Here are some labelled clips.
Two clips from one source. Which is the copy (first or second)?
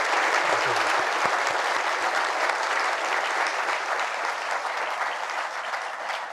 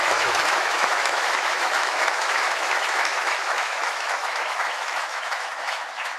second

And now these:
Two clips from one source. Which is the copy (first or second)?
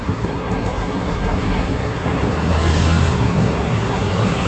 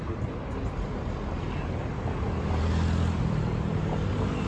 first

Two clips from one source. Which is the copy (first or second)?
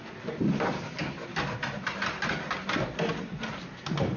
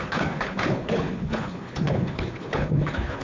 second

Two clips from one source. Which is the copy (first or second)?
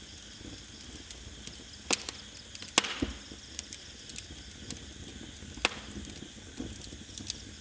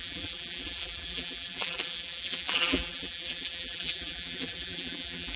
second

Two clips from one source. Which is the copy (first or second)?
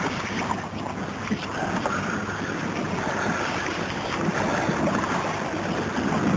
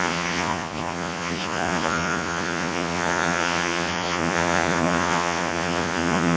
second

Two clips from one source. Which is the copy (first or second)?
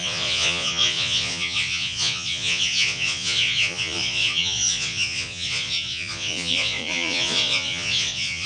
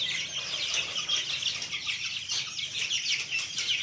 first